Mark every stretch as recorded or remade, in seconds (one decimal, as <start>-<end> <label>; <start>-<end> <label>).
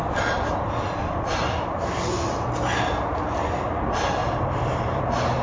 0.0-4.2 recorded; 4.2-5.0 remade; 5.0-5.4 recorded